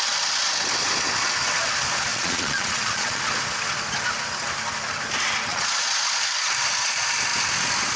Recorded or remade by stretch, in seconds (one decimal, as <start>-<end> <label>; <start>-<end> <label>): 0.0-2.1 recorded; 2.1-3.2 remade; 3.2-5.5 recorded; 5.5-6.0 remade; 6.0-8.0 recorded